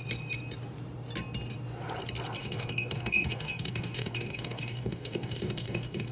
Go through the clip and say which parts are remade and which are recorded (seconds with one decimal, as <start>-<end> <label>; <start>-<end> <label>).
0.0-2.4 recorded; 2.4-6.1 remade